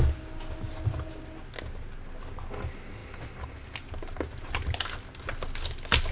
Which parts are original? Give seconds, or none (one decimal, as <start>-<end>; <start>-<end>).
0.0-6.1